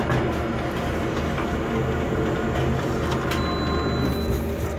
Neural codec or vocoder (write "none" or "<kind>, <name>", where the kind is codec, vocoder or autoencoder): none